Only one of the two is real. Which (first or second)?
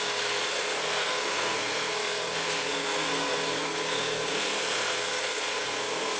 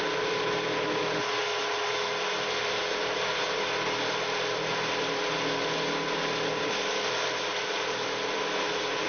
second